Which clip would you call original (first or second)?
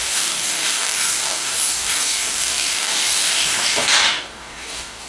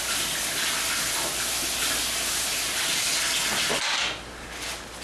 second